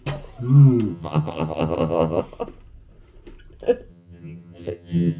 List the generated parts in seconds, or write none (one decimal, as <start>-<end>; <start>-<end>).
0.9-2.2; 3.9-5.2